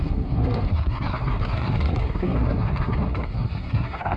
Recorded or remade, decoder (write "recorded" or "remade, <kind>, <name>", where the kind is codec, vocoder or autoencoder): remade, codec, SNAC